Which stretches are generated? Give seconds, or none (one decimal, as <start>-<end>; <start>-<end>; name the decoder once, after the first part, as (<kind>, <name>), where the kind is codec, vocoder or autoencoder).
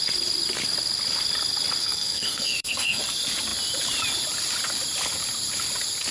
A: 1.8-3.0 (codec, SNAC)